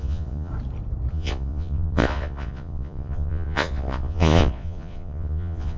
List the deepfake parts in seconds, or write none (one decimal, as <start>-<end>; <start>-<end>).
0.0-0.5; 1.1-5.8